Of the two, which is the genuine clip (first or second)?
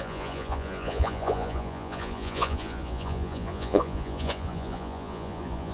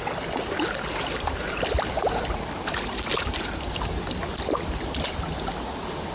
second